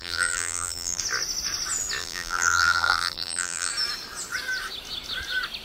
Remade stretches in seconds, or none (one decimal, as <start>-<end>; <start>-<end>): 0.0-1.0; 2.0-3.7